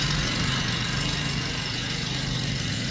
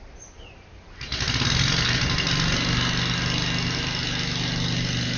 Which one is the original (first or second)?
second